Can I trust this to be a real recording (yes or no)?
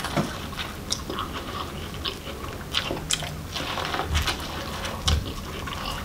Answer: yes